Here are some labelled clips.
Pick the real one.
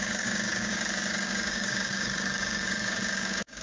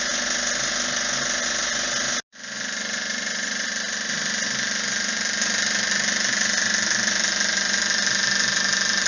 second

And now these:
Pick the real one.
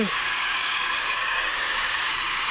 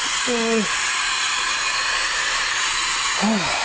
second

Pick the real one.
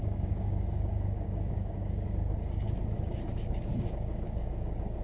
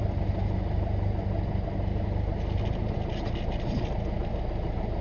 second